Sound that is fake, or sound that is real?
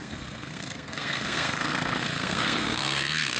fake